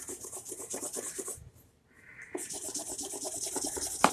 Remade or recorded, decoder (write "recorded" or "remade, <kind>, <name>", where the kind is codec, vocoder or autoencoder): remade, vocoder, BigVGAN v2